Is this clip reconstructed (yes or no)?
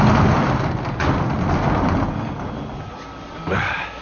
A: no